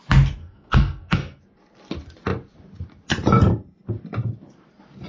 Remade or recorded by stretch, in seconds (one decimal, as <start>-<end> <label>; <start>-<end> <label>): 0.0-0.4 recorded; 0.4-1.4 remade; 1.4-5.1 recorded